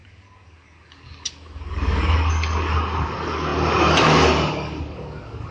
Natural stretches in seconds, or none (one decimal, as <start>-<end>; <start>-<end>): none